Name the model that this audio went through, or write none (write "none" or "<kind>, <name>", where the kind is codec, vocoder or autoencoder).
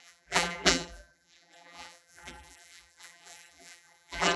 vocoder, BigVGAN v2